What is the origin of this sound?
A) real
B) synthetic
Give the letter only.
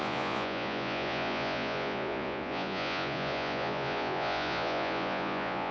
B